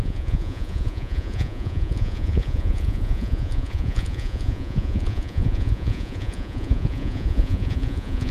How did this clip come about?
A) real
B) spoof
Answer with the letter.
B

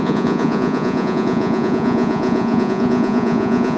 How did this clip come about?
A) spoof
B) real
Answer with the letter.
A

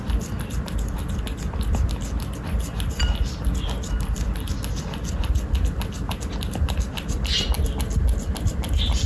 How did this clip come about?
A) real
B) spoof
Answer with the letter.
A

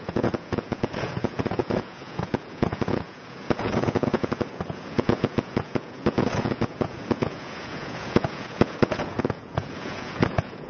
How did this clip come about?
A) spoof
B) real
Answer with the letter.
A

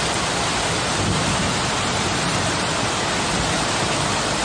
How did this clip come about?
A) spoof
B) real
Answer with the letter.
B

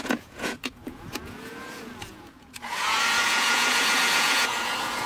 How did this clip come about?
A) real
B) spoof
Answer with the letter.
B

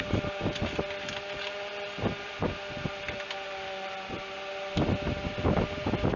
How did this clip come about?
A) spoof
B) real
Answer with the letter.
B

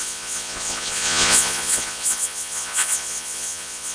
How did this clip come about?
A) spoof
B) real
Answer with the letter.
A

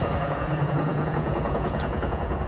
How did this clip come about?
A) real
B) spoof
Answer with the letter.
B